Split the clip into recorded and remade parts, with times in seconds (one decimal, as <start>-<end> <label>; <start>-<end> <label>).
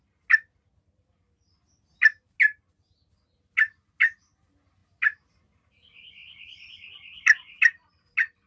0.0-6.2 recorded; 6.2-7.9 remade; 7.9-8.5 recorded